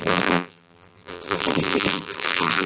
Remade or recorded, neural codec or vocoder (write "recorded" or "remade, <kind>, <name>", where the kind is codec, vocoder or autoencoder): remade, vocoder, BigVGAN v2